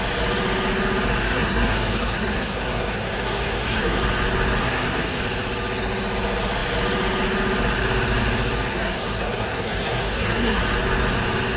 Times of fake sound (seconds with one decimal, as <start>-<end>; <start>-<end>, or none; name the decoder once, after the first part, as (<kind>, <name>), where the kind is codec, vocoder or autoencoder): 1.2-4.0 (codec, SNAC); 4.6-5.2; 8.7-10.6